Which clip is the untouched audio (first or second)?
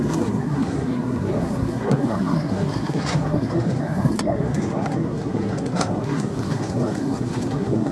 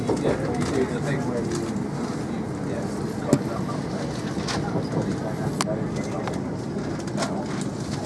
second